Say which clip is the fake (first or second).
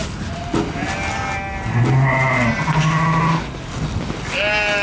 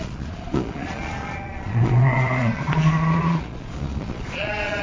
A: second